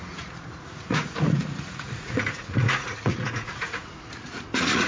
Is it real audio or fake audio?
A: fake